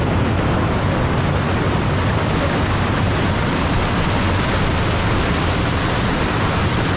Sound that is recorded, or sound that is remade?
recorded